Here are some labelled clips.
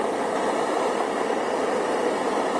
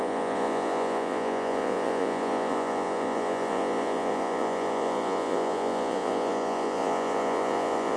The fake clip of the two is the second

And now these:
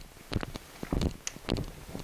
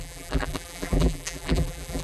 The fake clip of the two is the second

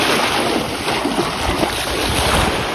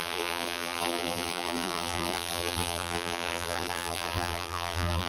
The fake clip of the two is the second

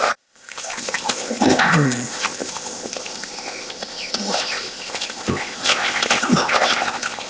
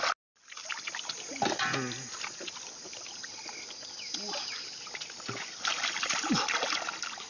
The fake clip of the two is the first